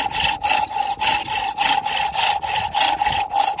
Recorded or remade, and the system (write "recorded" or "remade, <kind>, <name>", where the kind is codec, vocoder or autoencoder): recorded